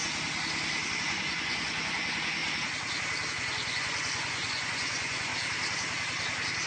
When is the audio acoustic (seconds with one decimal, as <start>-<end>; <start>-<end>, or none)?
0.0-0.9; 2.4-3.3; 5.3-6.7